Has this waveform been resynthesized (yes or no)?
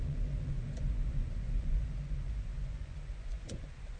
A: yes